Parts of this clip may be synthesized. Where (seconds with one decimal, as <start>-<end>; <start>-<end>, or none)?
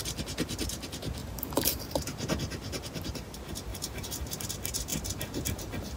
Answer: 1.2-1.8; 3.7-4.5